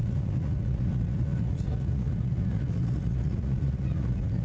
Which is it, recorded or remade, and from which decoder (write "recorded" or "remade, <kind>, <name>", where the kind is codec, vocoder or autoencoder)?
remade, vocoder, Vocos